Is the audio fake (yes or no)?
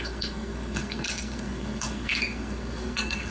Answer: yes